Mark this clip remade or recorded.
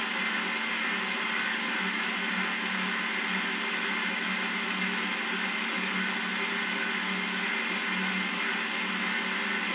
recorded